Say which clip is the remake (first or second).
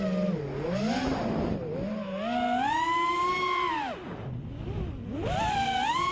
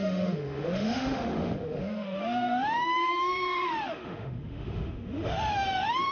second